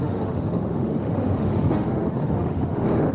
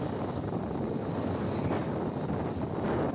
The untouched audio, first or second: second